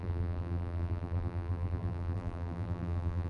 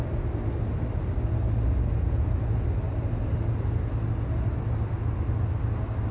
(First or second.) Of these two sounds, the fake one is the first